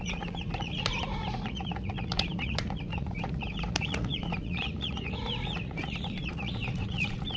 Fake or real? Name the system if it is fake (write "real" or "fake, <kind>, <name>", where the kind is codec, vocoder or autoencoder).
fake, vocoder, Vocos